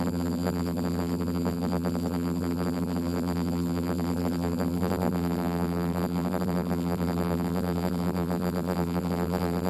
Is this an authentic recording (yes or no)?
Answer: no